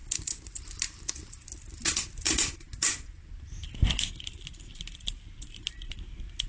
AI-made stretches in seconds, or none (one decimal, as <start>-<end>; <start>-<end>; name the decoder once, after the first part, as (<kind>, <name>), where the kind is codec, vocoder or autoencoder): none